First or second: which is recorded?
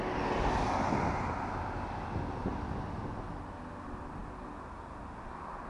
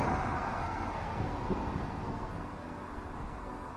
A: first